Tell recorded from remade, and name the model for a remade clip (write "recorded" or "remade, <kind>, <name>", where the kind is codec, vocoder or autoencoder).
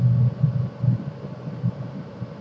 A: recorded